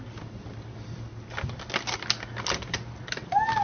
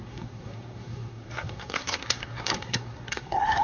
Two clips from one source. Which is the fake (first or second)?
second